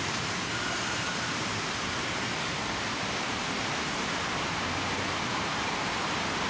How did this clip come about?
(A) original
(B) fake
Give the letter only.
B